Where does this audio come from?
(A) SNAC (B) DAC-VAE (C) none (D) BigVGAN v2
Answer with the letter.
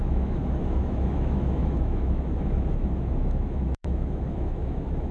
B